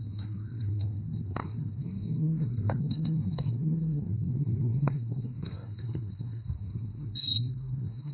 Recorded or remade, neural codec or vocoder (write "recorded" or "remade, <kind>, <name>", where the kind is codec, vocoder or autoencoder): remade, codec, SNAC